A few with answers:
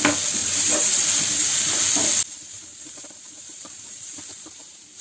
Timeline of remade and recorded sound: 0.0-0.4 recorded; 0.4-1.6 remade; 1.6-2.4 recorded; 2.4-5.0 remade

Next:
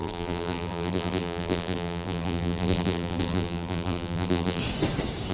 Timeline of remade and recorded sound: 0.0-4.6 remade; 4.6-5.3 recorded

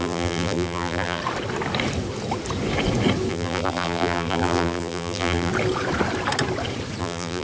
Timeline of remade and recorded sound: 0.0-1.2 remade; 1.2-3.3 recorded; 3.3-5.5 remade; 5.5-7.0 recorded; 7.0-7.4 remade

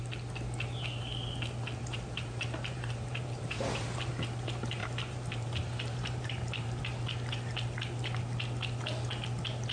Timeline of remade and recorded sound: 0.0-1.8 recorded; 1.8-4.1 remade; 4.1-4.8 recorded; 4.8-6.8 remade; 6.8-9.7 recorded

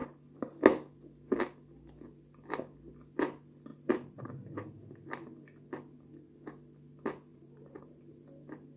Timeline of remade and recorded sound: 0.0-3.7 recorded; 3.7-4.3 remade; 4.3-7.3 recorded; 7.3-8.0 remade; 8.0-8.8 recorded